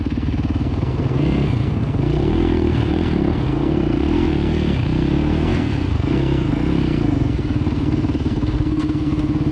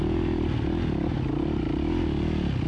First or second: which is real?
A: second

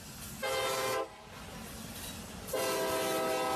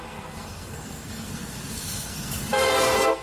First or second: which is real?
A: first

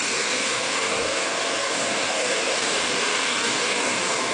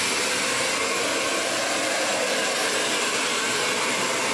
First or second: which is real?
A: second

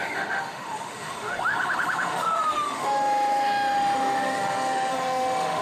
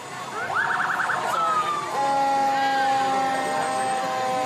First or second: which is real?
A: second